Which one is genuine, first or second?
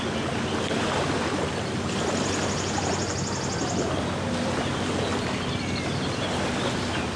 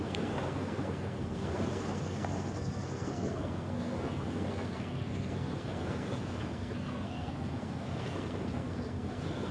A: first